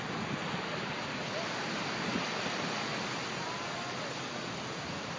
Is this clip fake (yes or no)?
no